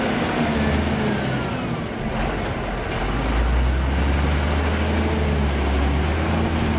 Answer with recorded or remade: recorded